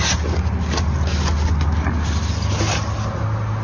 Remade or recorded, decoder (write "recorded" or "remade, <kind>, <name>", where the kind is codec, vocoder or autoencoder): recorded